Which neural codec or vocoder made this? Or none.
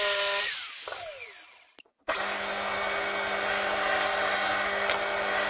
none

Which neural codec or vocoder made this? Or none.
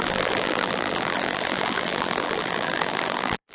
vocoder, BigVGAN v2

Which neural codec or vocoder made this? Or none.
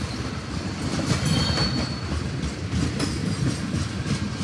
none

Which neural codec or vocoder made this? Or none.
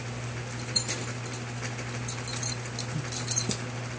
none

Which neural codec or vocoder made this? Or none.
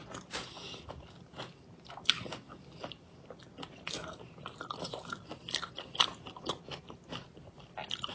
vocoder, BigVGAN v2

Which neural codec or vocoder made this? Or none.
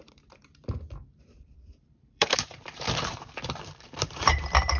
vocoder, BigVGAN v2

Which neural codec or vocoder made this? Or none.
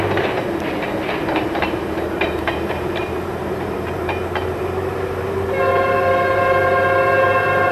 vocoder, BigVGAN v2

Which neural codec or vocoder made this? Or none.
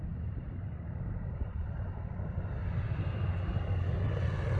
none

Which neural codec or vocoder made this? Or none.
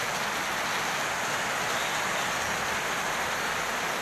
none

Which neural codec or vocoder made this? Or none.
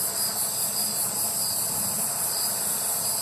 none